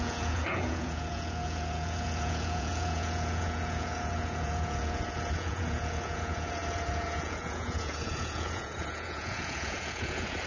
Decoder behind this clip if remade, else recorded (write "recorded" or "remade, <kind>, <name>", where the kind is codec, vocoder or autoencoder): remade, vocoder, Vocos